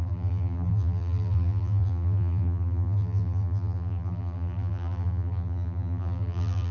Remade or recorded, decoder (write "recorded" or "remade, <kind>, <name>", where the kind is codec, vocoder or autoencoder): remade, vocoder, BigVGAN v2